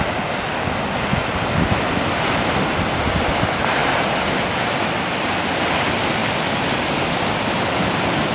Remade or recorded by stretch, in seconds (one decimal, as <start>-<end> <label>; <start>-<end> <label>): 0.0-8.3 recorded